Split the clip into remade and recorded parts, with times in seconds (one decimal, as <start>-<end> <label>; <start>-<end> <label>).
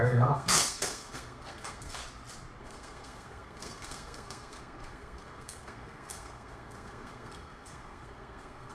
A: 0.0-2.0 remade; 2.0-2.6 recorded; 2.6-8.7 remade